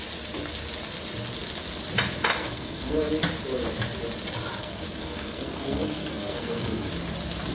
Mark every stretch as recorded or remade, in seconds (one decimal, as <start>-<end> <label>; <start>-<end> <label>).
0.0-2.4 recorded; 2.4-3.1 remade; 3.1-4.6 recorded; 4.6-6.9 remade; 6.9-7.5 recorded